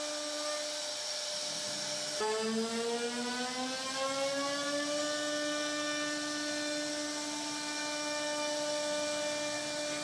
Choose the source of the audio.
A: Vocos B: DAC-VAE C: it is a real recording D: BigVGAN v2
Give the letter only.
C